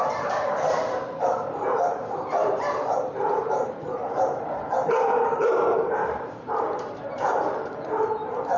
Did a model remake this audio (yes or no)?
yes